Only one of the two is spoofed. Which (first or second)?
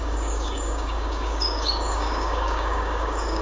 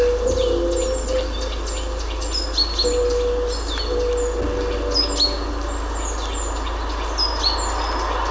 first